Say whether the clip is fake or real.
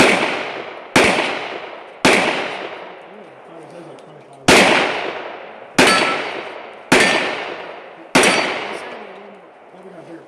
real